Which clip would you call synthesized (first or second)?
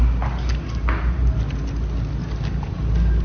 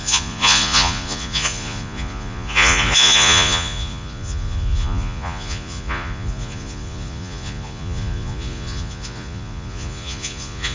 second